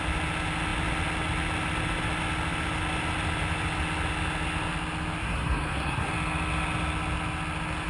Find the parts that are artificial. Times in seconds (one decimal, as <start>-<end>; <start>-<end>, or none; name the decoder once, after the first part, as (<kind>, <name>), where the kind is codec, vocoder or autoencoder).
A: 5.2-6.1 (codec, SNAC)